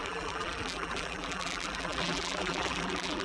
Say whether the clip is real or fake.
fake